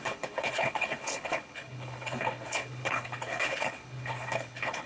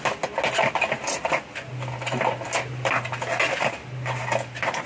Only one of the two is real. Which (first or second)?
second